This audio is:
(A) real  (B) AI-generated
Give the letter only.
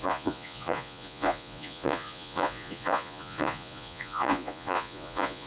B